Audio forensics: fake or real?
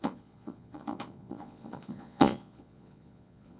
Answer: fake